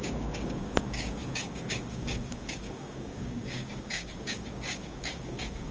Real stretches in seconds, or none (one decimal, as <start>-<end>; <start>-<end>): none